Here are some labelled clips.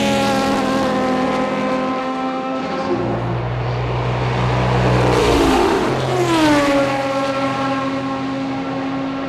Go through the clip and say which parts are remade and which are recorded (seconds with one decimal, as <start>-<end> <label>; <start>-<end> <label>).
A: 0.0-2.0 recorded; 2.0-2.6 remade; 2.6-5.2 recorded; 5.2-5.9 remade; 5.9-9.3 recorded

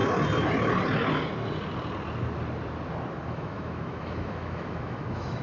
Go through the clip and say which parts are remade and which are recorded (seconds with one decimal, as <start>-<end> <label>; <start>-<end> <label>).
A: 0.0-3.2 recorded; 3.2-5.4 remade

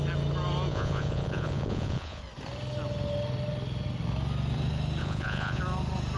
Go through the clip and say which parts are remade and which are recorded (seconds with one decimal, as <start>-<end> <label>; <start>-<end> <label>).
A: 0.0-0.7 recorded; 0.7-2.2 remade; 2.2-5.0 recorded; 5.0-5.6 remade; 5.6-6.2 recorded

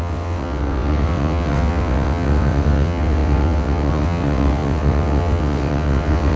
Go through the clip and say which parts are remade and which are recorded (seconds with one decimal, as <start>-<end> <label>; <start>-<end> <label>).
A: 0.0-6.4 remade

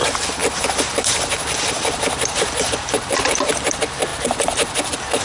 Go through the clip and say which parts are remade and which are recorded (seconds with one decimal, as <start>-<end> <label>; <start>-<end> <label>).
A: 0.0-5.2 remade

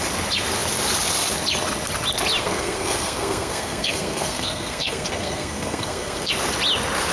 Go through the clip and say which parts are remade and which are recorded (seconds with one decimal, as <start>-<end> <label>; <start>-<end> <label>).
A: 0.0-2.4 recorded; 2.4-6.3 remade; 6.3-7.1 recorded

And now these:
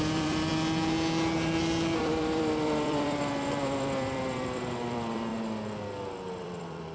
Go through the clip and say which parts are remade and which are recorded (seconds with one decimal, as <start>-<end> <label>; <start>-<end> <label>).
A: 0.0-0.5 remade; 0.5-2.0 recorded; 2.0-5.3 remade; 5.3-6.3 recorded; 6.3-6.9 remade

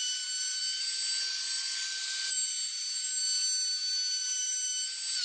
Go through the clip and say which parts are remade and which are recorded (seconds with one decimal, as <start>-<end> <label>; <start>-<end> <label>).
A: 0.0-5.2 remade